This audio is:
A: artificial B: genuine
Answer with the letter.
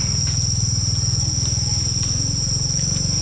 B